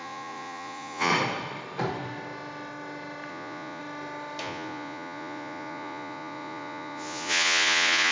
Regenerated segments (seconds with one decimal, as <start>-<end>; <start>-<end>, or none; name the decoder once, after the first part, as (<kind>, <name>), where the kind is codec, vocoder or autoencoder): 0.0-1.1 (vocoder, Vocos); 3.3-3.8; 4.4-8.1